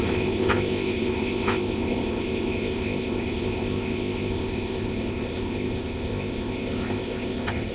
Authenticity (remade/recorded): remade